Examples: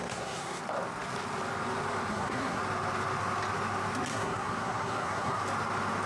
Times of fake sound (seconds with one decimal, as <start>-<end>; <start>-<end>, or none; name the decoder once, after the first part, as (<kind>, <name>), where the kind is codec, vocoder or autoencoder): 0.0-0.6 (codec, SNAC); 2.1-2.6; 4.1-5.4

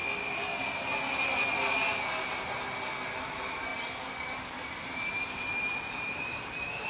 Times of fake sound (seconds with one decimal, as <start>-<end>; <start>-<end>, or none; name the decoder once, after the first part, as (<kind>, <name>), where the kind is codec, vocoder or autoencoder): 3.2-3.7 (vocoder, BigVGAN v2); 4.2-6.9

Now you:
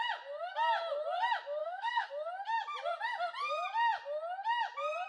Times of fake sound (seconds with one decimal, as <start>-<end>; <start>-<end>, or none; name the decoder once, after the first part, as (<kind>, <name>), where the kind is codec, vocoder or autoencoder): 1.6-2.1 (codec, SNAC)

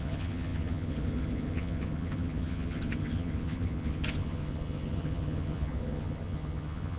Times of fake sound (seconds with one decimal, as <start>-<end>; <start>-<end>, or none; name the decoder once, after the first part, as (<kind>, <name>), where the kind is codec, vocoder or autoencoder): 0.0-7.0 (vocoder, HiFi-GAN)

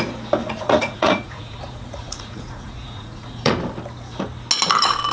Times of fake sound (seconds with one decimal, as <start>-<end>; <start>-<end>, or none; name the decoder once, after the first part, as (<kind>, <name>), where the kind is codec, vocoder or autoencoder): 0.4-3.5 (vocoder, Vocos)

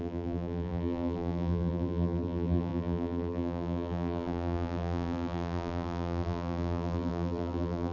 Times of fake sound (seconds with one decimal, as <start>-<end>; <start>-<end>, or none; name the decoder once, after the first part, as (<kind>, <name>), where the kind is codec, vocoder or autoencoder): 0.0-7.9 (vocoder, BigVGAN v2)